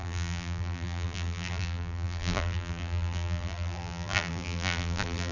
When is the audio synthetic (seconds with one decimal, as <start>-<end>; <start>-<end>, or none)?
0.0-5.3

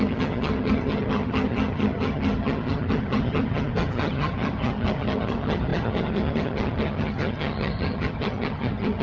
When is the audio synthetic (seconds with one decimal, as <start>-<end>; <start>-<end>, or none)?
0.0-9.0

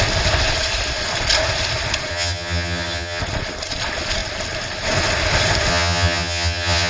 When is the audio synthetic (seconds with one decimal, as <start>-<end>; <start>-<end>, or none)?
2.1-3.2; 5.7-6.9